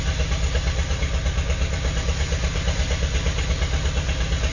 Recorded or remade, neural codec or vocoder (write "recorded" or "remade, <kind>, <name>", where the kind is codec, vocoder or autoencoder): remade, vocoder, BigVGAN v2